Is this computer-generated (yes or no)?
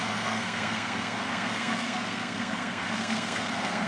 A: yes